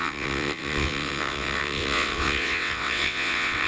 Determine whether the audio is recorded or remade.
remade